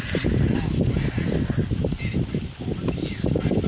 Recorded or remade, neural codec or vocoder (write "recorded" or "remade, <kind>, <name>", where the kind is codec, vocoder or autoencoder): recorded